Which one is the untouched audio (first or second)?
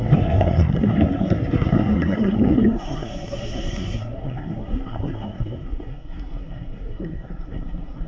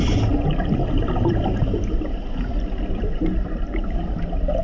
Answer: second